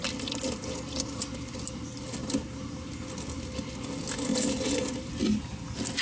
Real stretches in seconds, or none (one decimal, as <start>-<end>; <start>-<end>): 0.0-6.0